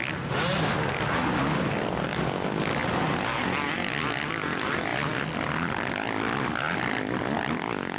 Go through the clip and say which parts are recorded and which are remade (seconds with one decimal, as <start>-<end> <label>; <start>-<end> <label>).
0.0-8.0 recorded